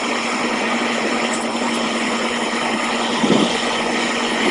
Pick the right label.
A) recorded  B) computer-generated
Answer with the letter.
B